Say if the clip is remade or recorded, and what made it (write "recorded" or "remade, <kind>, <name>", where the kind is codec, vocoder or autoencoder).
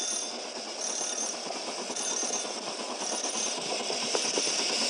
recorded